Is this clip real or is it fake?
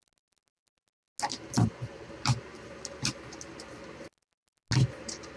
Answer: real